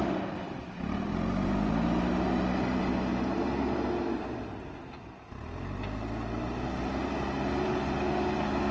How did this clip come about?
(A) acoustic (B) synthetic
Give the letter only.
A